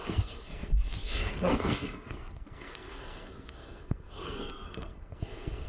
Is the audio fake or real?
fake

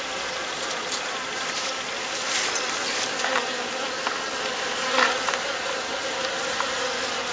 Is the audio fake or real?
real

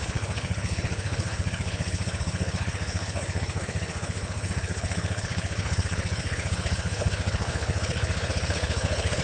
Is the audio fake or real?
fake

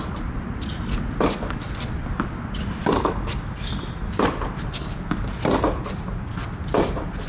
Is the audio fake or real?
real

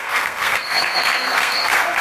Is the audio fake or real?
fake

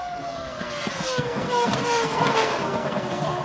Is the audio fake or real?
fake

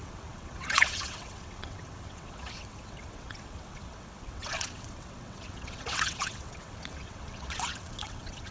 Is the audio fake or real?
fake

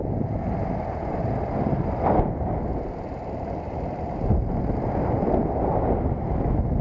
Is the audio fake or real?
real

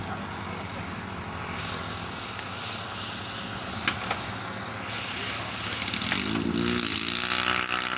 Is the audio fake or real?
real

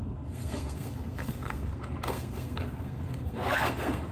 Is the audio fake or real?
fake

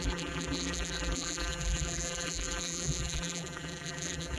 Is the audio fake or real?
fake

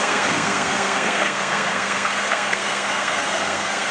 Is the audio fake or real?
fake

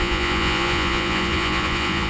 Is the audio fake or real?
fake